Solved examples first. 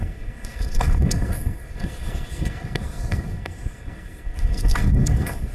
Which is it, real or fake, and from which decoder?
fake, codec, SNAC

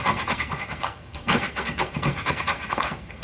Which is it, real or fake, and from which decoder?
fake, codec, SNAC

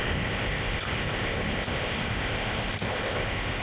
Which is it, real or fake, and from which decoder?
fake, codec, ZipCodec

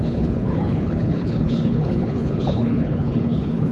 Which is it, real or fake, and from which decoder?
fake, codec, HILCodec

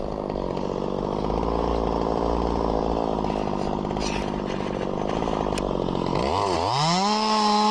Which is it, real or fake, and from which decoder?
real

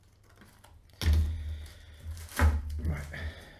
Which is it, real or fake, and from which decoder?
real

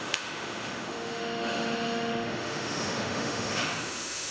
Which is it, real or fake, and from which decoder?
fake, autoencoder, DAC-VAE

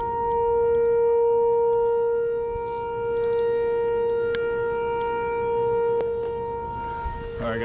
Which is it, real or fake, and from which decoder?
real